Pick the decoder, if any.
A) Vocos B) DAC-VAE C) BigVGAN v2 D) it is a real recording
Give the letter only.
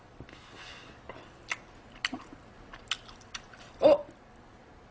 D